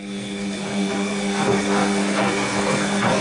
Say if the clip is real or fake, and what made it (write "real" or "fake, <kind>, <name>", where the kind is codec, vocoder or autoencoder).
fake, codec, SNAC